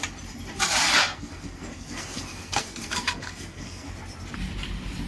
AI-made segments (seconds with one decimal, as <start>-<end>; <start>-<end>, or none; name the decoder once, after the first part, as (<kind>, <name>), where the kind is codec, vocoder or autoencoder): 1.0-3.9 (codec, SNAC)